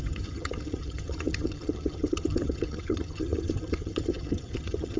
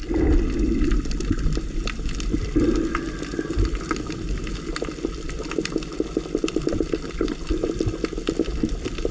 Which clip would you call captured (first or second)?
second